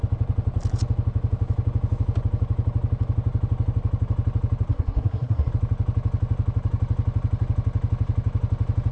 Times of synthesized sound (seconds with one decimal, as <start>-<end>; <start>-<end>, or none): 4.7-5.5